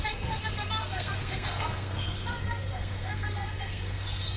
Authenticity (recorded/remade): remade